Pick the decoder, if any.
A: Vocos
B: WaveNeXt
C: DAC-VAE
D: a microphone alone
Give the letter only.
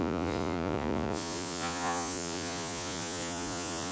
A